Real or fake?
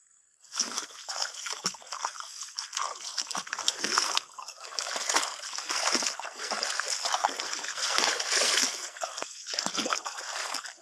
fake